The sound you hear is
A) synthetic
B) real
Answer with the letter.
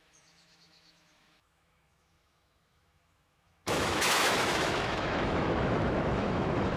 A